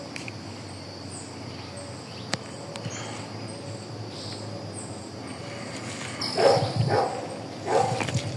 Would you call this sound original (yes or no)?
yes